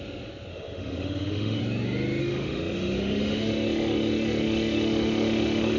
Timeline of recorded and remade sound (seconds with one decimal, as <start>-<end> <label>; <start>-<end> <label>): 0.0-0.5 recorded; 0.5-1.6 remade; 1.6-2.2 recorded; 2.2-5.8 remade